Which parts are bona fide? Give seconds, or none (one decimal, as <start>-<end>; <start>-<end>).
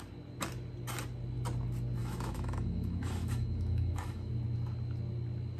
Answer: 0.0-2.0; 4.3-5.6